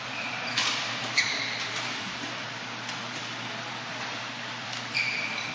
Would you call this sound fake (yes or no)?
yes